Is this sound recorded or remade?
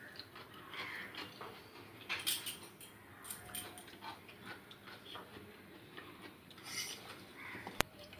recorded